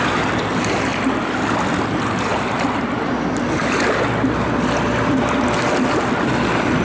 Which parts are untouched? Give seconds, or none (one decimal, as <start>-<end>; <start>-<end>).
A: 0.0-6.8